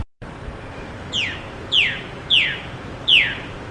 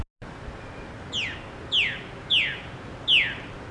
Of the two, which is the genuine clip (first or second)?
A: second